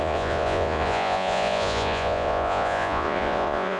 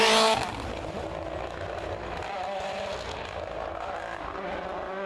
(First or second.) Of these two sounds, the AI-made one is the first